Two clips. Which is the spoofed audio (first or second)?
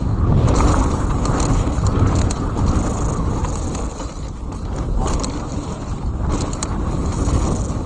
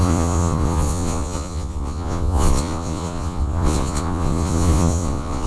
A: second